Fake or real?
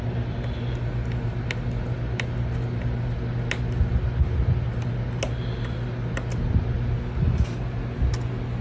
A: real